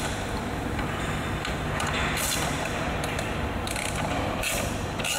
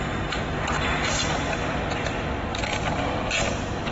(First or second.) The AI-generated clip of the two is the first